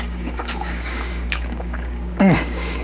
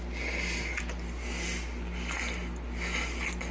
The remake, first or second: first